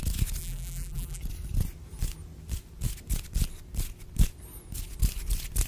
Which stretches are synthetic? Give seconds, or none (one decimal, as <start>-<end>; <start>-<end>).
0.4-1.2